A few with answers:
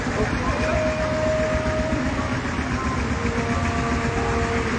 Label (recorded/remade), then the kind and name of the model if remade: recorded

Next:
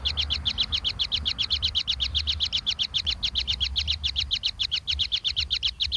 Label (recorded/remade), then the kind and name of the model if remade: recorded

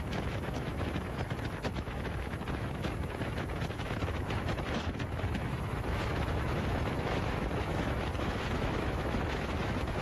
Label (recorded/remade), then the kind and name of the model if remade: remade, autoencoder, DAC-VAE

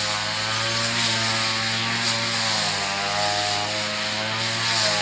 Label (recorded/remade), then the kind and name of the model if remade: recorded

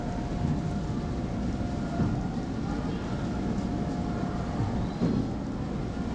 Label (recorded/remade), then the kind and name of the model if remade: recorded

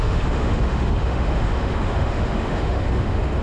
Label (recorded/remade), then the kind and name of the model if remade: remade, autoencoder, DAC-VAE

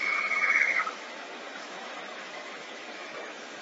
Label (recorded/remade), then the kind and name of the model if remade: remade, autoencoder, DAC-VAE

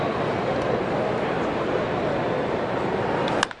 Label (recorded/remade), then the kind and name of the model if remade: recorded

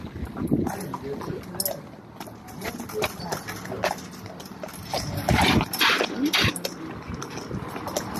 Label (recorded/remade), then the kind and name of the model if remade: recorded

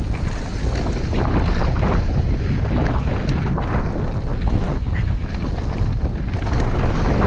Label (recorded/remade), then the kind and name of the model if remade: recorded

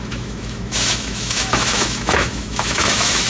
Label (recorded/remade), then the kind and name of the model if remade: remade, autoencoder, DAC-VAE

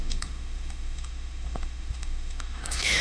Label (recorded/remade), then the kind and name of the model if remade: remade, autoencoder, DAC-VAE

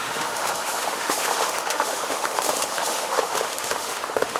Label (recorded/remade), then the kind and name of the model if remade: remade, autoencoder, DAC-VAE